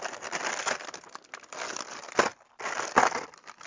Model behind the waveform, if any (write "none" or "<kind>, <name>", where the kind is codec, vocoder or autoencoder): none